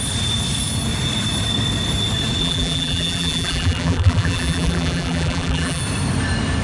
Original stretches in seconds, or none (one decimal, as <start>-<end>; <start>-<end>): 0.0-2.4; 5.8-6.6

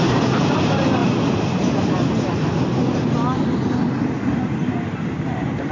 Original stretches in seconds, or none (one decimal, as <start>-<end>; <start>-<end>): 1.0-4.4

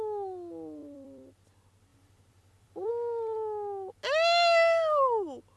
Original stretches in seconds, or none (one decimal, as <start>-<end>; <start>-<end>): 0.0-0.8; 1.3-1.9; 2.9-5.6

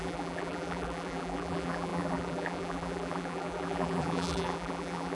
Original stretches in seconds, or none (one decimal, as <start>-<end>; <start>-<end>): none

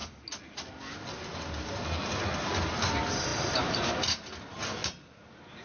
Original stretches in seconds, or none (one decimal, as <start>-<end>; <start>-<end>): 0.0-3.3; 3.9-5.6

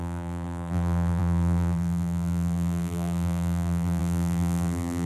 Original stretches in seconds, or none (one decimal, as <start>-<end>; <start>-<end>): none